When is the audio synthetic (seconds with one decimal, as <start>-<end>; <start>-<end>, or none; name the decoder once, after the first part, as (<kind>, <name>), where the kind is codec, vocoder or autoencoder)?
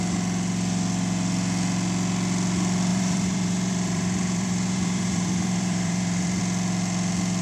2.9-6.4 (vocoder, BigVGAN v2)